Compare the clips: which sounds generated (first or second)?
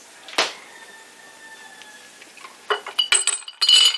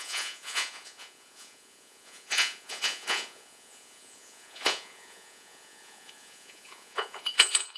second